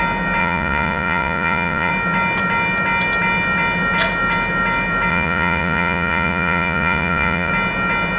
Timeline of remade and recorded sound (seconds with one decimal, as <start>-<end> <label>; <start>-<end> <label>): 0.0-0.4 recorded; 0.4-1.9 remade; 1.9-5.1 recorded; 5.1-7.5 remade; 7.5-8.2 recorded